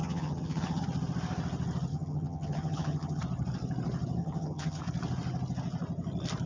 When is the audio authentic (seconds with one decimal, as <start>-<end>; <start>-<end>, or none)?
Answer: 0.8-1.9; 3.2-4.2; 4.8-6.5